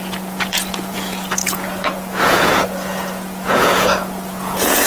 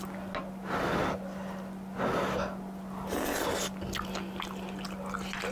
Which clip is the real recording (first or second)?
second